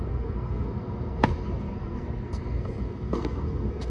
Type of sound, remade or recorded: remade